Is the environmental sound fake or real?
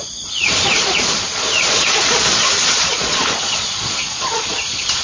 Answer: fake